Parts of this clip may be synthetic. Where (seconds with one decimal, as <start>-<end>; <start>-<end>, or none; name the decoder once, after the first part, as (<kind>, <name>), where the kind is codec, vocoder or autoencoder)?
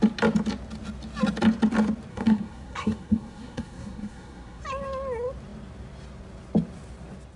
2.1-4.6 (codec, SNAC)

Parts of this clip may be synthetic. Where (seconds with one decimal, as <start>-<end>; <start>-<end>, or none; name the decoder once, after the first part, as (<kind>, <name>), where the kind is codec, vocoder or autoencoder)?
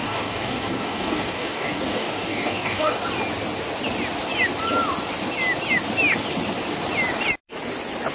0.0-3.0 (codec, DAC)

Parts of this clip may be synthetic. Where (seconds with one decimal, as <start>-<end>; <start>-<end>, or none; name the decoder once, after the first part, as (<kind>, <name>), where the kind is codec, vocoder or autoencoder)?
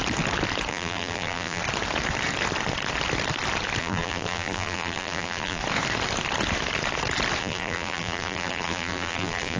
0.7-1.6 (vocoder, BigVGAN v2); 3.8-5.6; 7.4-9.6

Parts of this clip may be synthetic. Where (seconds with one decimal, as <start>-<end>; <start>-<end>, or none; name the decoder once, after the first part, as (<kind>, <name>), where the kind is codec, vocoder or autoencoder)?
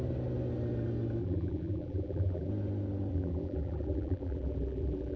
1.2-2.5 (vocoder, BigVGAN v2); 3.1-5.2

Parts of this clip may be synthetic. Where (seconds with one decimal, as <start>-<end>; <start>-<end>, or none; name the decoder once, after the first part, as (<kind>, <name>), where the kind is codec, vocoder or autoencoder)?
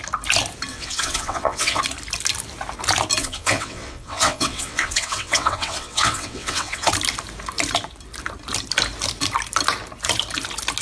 0.7-1.8 (vocoder, WaveNeXt); 3.2-6.9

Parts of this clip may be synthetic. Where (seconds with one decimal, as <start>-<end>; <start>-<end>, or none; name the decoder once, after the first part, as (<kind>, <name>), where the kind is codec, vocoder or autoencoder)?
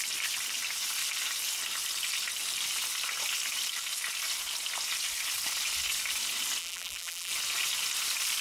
6.6-7.3 (vocoder, BigVGAN v2)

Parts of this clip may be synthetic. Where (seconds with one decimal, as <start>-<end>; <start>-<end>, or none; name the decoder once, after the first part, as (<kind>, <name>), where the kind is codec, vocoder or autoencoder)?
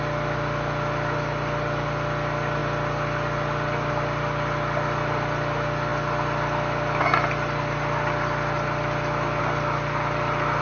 none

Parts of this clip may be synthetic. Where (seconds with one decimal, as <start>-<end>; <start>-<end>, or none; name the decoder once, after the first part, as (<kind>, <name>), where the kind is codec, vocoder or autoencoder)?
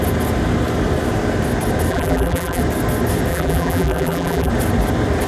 1.9-2.6 (vocoder, BigVGAN v2); 3.3-4.5